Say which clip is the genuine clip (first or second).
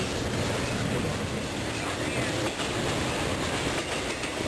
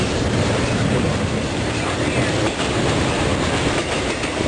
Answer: first